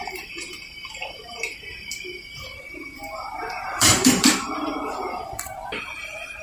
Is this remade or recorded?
remade